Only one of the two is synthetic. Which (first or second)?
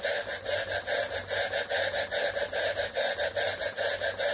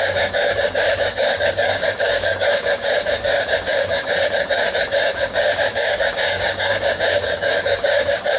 second